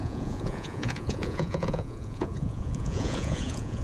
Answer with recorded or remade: remade